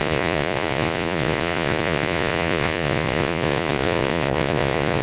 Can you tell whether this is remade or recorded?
remade